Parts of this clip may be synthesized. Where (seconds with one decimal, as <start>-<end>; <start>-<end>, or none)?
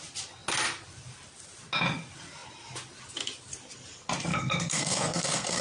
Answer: 4.3-5.6